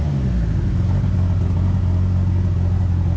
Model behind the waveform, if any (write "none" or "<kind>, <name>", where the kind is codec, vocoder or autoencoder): none